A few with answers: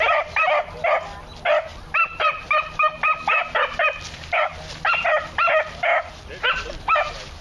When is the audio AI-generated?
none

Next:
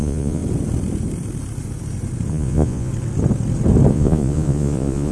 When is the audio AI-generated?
0.0-0.4 (vocoder, Vocos); 2.3-2.9; 3.9-5.1